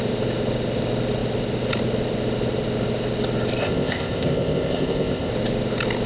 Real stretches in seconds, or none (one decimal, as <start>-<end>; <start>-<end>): 0.0-3.6; 5.3-6.1

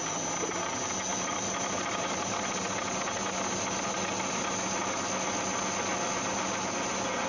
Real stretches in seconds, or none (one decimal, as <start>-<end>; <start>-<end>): 0.0-7.3

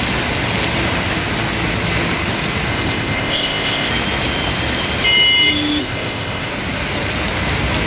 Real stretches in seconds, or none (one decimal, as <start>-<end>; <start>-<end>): 0.0-2.7; 3.9-5.8; 6.5-7.9

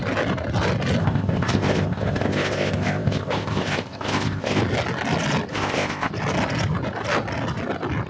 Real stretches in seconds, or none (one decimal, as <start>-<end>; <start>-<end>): 0.0-1.0; 4.6-5.5; 6.1-8.1

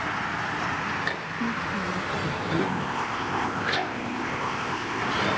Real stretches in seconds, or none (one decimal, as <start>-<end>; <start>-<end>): 0.0-2.6; 5.0-5.4

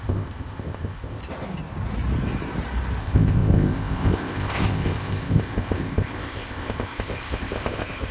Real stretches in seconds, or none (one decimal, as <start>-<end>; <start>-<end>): 1.2-3.0

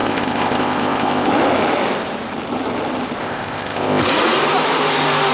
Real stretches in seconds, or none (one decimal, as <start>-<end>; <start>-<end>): 1.3-3.2; 4.0-5.3